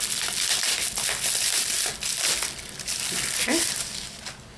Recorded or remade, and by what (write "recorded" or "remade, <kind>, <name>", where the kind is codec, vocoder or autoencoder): recorded